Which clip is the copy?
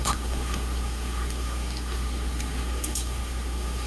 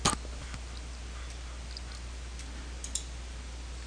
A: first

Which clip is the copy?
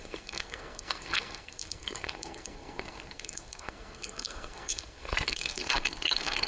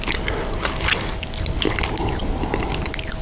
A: first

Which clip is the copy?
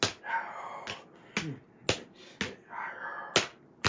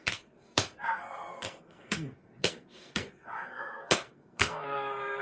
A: second